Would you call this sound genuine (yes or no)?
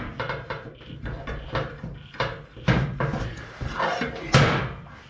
yes